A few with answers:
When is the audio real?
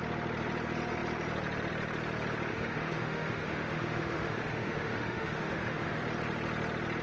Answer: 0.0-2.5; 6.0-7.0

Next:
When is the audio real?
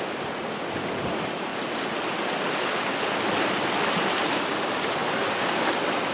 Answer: 0.0-6.1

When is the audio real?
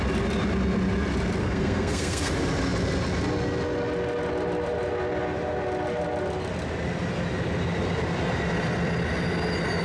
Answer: 0.0-1.4; 2.3-9.8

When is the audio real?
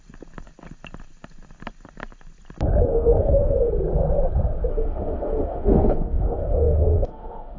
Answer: 0.0-2.9; 3.7-4.7